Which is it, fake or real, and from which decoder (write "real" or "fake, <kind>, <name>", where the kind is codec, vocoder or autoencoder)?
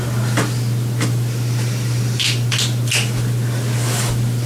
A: real